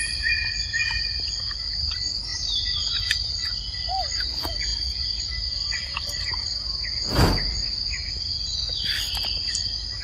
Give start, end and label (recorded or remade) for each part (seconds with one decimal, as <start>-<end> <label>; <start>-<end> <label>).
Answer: 0.0-2.3 recorded; 2.3-3.0 remade; 3.0-10.0 recorded